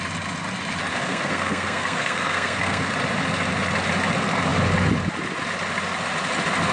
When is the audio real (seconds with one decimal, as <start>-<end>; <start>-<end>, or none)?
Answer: 0.0-0.9; 2.9-6.7